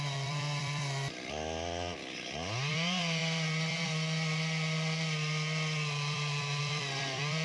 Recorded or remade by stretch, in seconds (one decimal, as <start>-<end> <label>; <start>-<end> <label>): 0.0-0.8 remade; 0.8-2.7 recorded; 2.7-7.4 remade